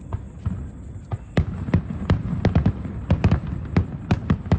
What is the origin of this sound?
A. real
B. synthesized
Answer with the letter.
A